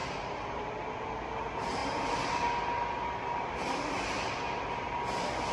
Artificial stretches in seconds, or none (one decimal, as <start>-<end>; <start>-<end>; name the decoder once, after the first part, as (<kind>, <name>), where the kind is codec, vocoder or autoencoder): none